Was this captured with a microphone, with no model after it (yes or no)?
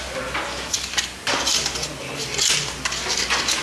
yes